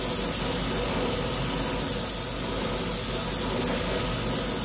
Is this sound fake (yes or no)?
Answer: no